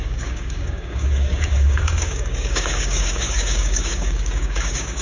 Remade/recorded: remade